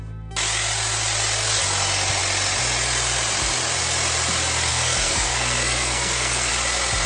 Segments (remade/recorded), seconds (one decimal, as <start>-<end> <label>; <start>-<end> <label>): 0.0-4.7 recorded; 4.7-6.5 remade; 6.5-7.1 recorded